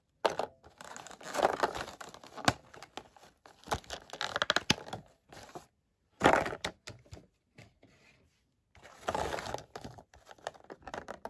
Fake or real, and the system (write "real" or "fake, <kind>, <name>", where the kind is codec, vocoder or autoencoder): real